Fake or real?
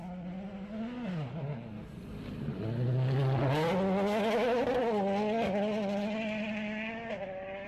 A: real